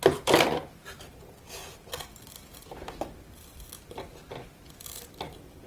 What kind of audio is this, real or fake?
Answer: real